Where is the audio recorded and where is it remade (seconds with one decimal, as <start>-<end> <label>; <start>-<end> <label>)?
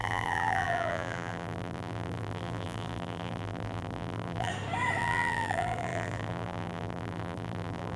0.0-4.5 remade; 4.5-5.0 recorded; 5.0-8.0 remade